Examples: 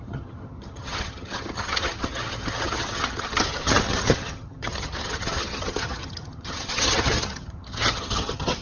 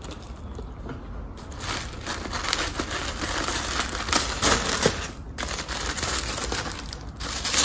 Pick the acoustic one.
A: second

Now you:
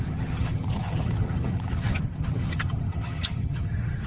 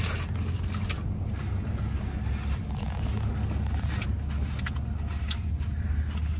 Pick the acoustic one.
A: second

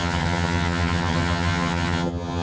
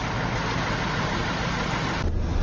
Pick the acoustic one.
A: second